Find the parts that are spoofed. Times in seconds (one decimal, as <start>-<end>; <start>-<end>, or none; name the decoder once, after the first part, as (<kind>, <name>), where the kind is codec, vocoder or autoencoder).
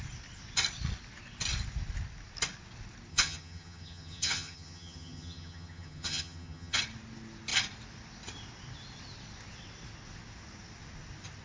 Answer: 3.1-6.8 (vocoder, HiFi-GAN)